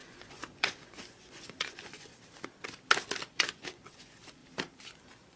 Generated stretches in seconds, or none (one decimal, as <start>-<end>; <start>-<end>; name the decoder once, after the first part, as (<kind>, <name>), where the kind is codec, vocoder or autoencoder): 0.0-2.1 (vocoder, Vocos); 3.2-4.4; 5.0-5.4